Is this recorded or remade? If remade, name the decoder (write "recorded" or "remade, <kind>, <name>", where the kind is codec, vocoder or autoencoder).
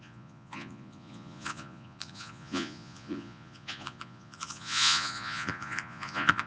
remade, vocoder, Vocos